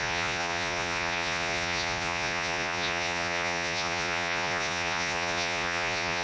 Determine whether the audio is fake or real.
fake